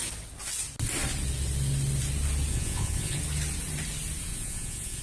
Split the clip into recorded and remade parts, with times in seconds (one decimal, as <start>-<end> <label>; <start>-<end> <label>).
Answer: 0.0-2.5 recorded; 2.5-3.2 remade; 3.2-4.3 recorded; 4.3-5.0 remade